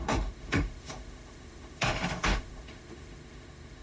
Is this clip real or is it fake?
fake